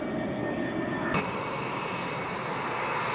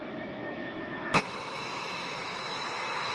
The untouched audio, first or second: first